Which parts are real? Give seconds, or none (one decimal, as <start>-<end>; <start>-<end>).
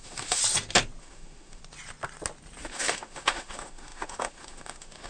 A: 0.4-1.0; 1.6-2.6